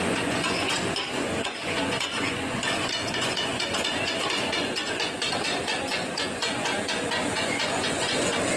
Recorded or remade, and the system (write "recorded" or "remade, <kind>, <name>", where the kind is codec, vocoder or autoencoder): remade, vocoder, Vocos